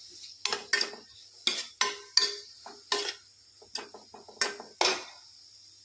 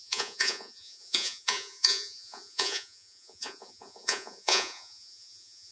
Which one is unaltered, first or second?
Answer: first